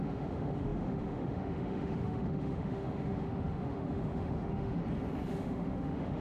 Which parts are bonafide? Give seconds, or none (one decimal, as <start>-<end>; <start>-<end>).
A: 4.8-5.3